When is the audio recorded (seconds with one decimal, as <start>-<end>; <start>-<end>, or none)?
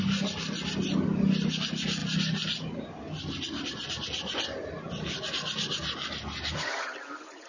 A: 0.0-7.5